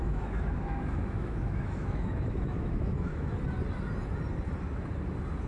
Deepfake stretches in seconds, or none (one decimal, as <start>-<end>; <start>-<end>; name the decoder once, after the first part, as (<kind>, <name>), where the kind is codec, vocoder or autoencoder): 0.0-3.3 (autoencoder, DAC-VAE)